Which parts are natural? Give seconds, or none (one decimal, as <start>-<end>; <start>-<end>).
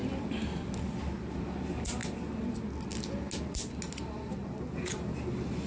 0.0-5.7